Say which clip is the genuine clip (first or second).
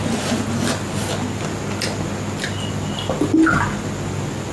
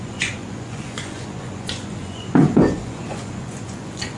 first